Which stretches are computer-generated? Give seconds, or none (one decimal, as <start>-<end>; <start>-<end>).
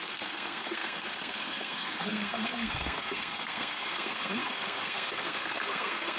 0.0-6.2